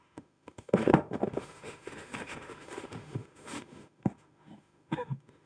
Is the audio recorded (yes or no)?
no